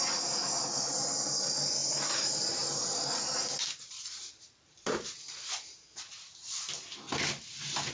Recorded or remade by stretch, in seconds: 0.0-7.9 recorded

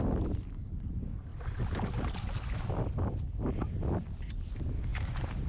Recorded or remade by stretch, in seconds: 0.0-5.5 recorded

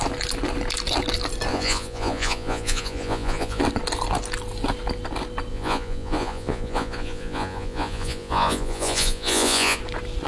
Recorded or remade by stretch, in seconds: 0.0-1.5 recorded; 1.5-3.6 remade; 3.6-5.5 recorded; 5.5-9.8 remade; 9.8-10.3 recorded

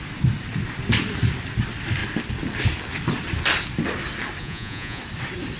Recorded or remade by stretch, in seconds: 0.0-4.4 recorded; 4.4-5.0 remade; 5.0-5.6 recorded

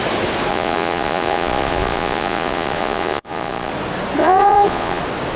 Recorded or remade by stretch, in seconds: 0.0-0.5 recorded; 0.5-3.7 remade; 3.7-4.2 recorded; 4.2-5.0 remade; 5.0-5.4 recorded

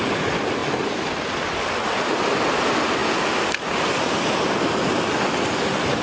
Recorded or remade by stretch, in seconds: 0.0-6.0 recorded

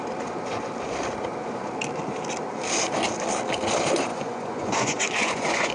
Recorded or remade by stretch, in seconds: 0.0-4.1 recorded; 4.1-5.7 remade

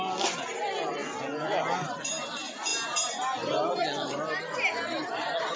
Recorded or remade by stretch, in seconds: 0.0-5.6 recorded